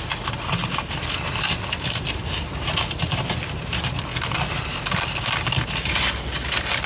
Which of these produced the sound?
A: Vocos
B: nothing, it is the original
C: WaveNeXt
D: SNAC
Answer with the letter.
B